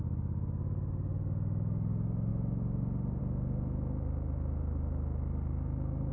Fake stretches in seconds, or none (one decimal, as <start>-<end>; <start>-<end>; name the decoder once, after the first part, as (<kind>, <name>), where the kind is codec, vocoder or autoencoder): none